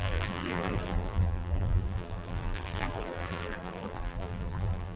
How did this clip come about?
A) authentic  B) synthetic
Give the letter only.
B